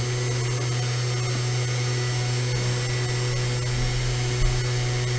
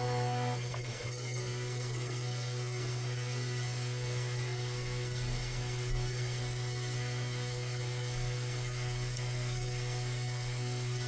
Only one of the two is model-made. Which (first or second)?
second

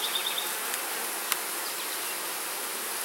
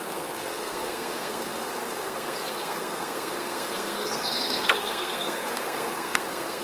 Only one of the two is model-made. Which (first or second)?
second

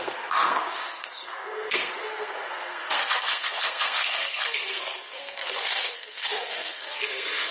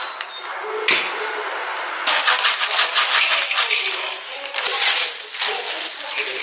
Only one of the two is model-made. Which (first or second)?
first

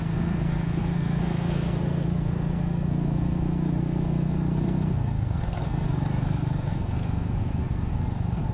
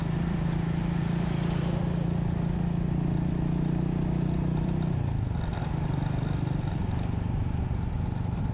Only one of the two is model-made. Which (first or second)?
first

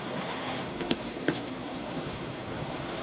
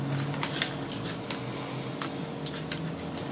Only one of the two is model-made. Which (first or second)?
first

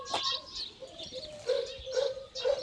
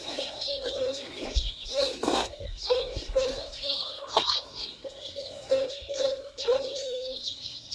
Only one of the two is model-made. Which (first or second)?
second